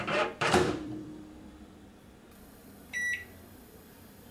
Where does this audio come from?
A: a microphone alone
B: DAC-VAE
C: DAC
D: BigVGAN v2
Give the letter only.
D